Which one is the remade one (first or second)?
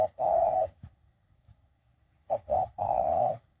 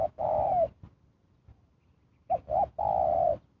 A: first